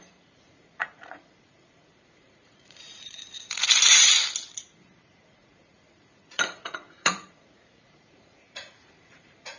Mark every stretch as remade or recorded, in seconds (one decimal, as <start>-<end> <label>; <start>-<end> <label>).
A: 0.0-3.7 remade; 3.7-5.1 recorded; 5.1-9.6 remade